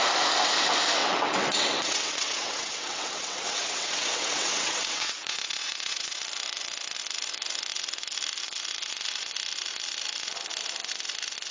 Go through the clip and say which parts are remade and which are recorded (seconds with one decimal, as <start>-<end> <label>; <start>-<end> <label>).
0.0-1.0 recorded; 1.0-6.2 remade; 6.2-11.5 recorded